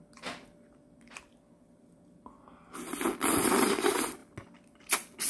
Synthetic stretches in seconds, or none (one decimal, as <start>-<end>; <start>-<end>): none